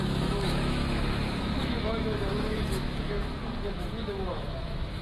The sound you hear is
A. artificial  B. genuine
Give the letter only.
A